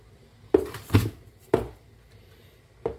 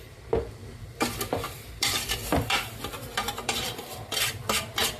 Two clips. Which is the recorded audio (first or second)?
first